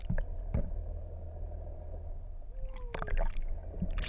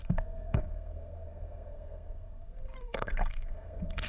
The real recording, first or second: first